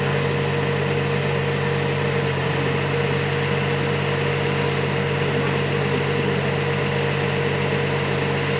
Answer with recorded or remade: recorded